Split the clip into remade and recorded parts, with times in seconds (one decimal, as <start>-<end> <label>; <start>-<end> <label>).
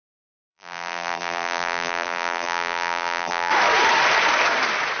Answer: 0.0-0.5 recorded; 0.5-3.5 remade; 3.5-5.0 recorded